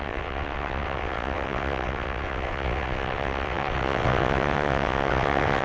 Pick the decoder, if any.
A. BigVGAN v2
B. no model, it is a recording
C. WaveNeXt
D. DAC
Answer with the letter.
C